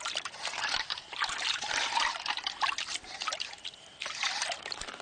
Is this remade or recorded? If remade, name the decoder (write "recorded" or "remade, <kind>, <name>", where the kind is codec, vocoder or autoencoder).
remade, vocoder, BigVGAN v2